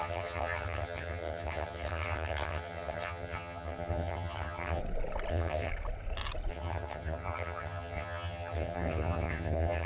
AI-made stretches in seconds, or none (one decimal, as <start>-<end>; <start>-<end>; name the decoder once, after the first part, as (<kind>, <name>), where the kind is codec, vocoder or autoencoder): 0.0-4.8 (vocoder, HiFi-GAN); 5.3-5.7; 6.5-9.9